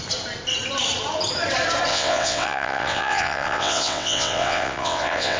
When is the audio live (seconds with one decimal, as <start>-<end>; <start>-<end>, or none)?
0.0-1.9